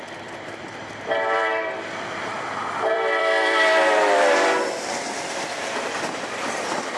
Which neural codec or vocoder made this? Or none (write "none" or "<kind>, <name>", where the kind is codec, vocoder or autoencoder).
vocoder, BigVGAN v2